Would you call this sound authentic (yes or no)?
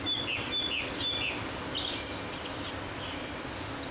yes